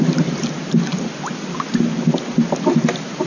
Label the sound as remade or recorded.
recorded